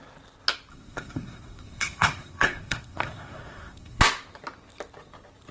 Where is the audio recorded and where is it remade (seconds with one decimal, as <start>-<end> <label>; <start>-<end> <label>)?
0.0-0.7 recorded; 0.7-4.0 remade; 4.0-5.5 recorded